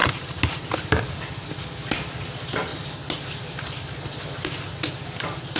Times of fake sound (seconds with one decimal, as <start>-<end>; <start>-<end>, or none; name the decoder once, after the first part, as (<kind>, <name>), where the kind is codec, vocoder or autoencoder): 0.0-1.0 (vocoder, BigVGAN v2); 2.7-4.1